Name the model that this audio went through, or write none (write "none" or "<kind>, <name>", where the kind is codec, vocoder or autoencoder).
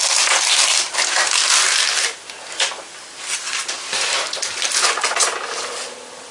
none